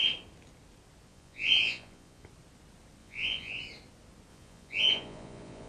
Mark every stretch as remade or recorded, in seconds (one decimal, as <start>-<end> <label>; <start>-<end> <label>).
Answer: 0.0-1.1 recorded; 1.1-2.3 remade; 2.3-3.0 recorded; 3.0-3.6 remade; 3.6-4.3 recorded; 4.3-5.7 remade